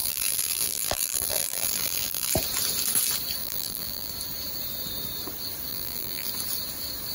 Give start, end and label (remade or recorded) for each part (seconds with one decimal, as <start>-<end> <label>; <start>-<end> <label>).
0.0-2.3 remade; 2.3-3.4 recorded; 3.4-4.1 remade; 4.1-5.7 recorded; 5.7-6.3 remade; 6.3-7.1 recorded

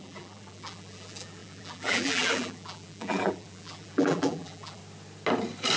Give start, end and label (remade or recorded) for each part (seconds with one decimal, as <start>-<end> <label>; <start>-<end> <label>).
0.0-4.8 remade; 4.8-5.8 recorded

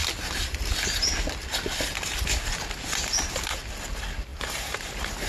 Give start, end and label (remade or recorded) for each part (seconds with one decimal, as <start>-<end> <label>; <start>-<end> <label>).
0.0-4.3 recorded; 4.3-5.3 remade

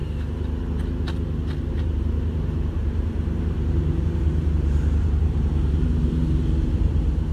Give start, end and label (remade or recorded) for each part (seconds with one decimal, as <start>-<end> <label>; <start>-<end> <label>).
0.0-1.6 recorded; 1.6-7.3 remade

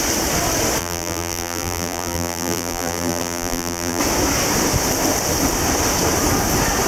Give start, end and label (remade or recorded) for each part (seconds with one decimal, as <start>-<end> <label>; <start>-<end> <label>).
0.0-0.8 recorded; 0.8-4.0 remade; 4.0-6.9 recorded

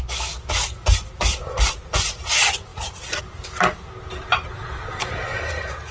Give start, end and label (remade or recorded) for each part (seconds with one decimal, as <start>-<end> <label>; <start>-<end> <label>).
0.0-2.7 recorded; 2.7-3.2 remade; 3.2-5.9 recorded